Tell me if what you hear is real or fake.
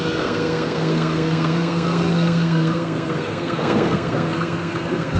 fake